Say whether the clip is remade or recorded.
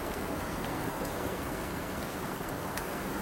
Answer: remade